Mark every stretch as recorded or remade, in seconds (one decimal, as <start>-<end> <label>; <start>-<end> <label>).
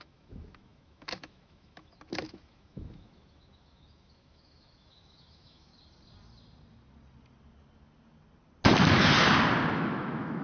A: 0.0-5.7 remade; 5.7-9.7 recorded; 9.7-10.4 remade